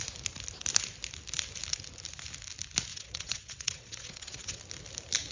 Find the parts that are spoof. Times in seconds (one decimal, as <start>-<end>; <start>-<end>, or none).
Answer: 2.9-4.6